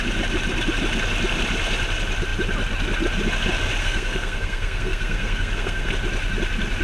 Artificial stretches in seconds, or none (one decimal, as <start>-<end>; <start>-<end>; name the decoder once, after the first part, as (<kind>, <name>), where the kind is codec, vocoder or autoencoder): 3.8-5.9 (codec, SNAC)